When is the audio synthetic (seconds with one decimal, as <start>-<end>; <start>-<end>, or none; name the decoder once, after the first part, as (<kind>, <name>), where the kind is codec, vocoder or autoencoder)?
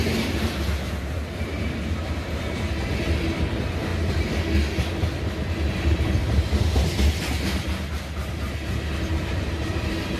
none